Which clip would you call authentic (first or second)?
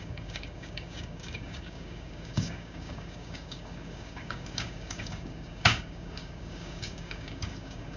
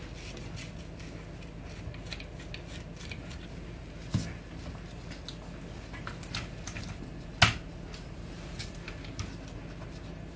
second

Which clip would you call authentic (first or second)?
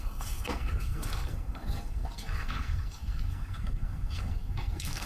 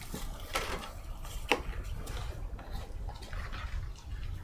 second